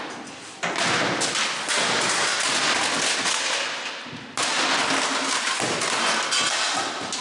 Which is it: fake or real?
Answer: real